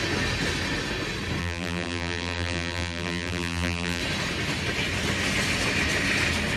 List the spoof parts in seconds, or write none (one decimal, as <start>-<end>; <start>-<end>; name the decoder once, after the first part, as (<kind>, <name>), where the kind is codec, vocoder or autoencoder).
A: 1.4-4.0 (vocoder, BigVGAN v2)